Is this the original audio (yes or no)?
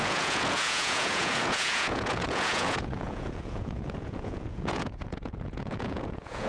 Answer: no